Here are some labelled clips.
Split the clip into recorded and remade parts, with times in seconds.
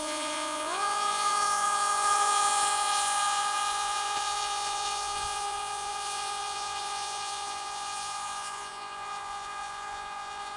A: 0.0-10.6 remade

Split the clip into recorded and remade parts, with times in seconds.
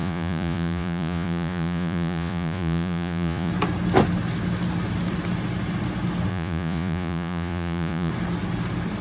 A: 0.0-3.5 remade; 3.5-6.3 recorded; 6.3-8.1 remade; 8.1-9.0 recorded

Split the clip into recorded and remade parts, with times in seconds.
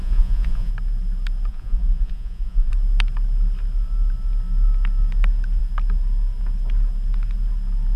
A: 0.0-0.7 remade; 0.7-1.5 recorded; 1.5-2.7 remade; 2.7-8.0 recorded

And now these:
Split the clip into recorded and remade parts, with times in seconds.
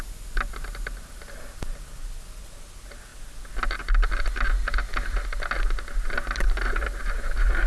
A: 0.0-7.7 recorded